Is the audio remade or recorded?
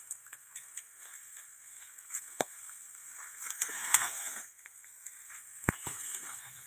remade